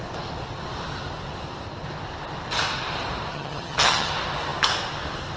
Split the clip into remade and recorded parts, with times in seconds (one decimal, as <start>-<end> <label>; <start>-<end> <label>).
0.0-3.3 recorded; 3.3-4.1 remade; 4.1-5.4 recorded